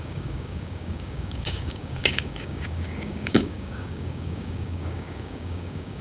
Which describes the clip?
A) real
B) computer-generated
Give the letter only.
B